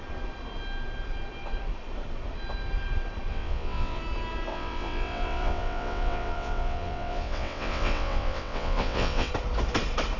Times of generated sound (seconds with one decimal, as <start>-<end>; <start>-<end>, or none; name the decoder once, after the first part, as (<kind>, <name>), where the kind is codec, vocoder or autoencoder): 3.3-4.0 (vocoder, WaveNeXt); 4.5-9.3